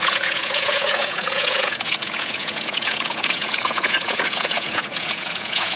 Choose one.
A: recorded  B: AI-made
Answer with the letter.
B